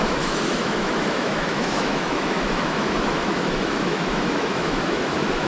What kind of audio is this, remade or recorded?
remade